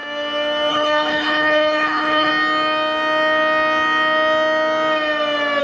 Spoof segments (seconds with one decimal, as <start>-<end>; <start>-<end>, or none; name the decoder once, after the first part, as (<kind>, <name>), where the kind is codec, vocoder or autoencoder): 0.7-2.3 (codec, HILCodec)

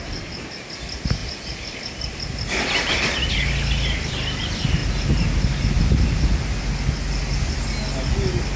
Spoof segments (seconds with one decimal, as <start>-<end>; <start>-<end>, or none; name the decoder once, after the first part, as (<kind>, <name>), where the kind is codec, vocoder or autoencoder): none

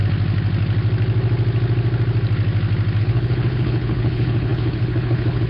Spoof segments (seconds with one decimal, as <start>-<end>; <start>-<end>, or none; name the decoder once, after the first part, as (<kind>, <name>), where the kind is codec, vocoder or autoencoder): 3.0-5.5 (codec, HILCodec)

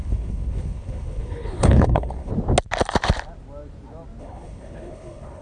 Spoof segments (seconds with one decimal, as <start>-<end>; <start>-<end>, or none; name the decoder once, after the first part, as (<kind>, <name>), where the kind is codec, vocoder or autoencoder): 0.0-2.3 (codec, HILCodec); 4.2-5.4

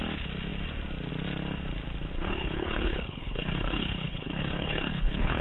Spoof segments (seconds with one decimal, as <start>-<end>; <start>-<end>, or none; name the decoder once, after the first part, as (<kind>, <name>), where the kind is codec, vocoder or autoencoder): 2.1-5.4 (codec, HILCodec)

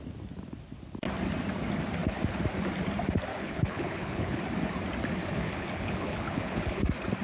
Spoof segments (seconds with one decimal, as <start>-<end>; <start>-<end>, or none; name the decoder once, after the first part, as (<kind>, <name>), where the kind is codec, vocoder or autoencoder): 3.3-4.4 (codec, HILCodec); 5.2-6.8